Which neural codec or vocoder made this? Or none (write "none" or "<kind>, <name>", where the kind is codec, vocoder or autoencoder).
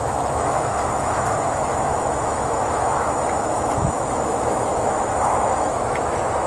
autoencoder, DAC-VAE